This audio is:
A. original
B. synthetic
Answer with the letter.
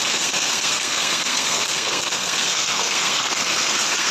B